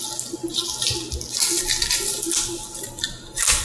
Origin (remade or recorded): recorded